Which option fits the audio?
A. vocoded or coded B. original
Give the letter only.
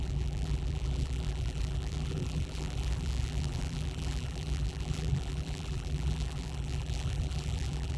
A